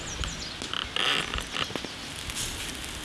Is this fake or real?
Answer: real